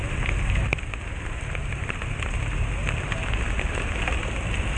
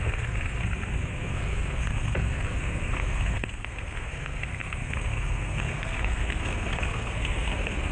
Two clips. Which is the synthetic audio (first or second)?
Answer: second